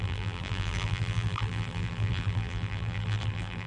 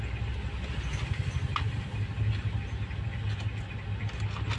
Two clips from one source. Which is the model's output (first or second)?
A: first